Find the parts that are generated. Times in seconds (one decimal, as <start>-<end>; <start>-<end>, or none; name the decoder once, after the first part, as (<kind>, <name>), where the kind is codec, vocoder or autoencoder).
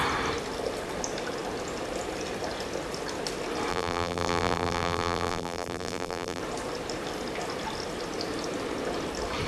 3.7-6.4 (vocoder, BigVGAN v2)